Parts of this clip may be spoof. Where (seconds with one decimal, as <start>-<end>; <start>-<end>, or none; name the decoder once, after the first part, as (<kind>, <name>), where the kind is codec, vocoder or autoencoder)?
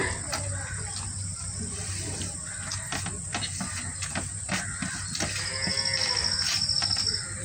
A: none